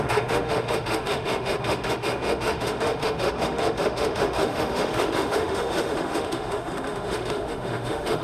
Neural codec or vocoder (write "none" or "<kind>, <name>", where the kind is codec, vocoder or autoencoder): autoencoder, DAC-VAE